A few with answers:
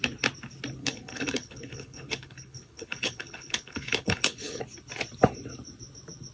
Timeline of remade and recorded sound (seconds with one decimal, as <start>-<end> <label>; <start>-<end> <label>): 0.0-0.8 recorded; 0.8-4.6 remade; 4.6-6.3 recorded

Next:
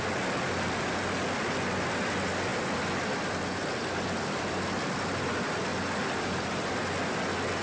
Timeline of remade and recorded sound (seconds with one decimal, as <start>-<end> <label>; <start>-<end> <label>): 0.0-7.6 recorded

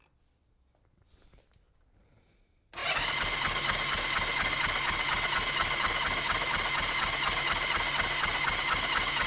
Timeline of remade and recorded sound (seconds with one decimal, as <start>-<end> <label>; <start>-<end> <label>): 0.0-9.3 recorded

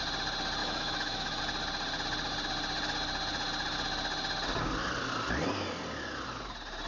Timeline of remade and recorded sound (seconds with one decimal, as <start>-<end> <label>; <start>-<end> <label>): 0.0-0.6 recorded; 0.6-1.4 remade; 1.4-6.9 recorded

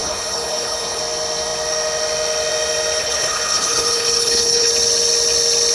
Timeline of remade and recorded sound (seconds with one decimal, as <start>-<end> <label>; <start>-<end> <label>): 0.0-1.0 remade; 1.0-3.0 recorded; 3.0-4.7 remade; 4.7-5.7 recorded

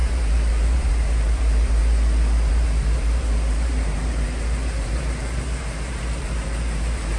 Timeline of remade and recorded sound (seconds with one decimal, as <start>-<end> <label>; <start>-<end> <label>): 0.0-1.8 remade; 1.8-2.5 recorded; 2.5-7.2 remade

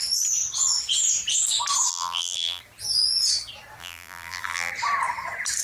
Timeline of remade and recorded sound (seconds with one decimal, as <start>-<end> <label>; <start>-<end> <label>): 0.0-1.9 recorded; 1.9-2.6 remade; 2.6-3.8 recorded; 3.8-4.7 remade; 4.7-5.6 recorded